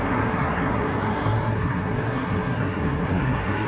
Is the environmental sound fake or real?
fake